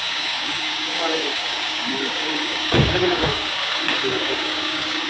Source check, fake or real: fake